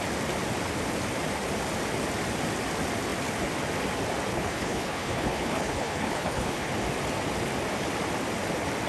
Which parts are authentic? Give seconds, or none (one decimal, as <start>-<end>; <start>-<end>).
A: 0.0-4.3; 6.7-8.9